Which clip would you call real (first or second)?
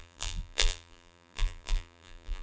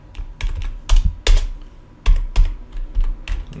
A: second